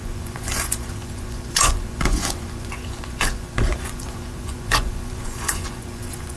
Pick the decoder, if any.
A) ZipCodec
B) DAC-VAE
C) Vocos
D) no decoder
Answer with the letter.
C